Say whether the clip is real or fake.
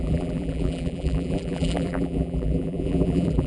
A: fake